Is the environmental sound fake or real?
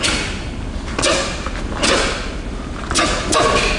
real